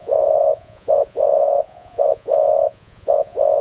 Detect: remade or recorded remade